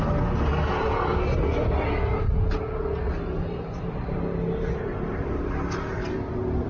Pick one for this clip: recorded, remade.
recorded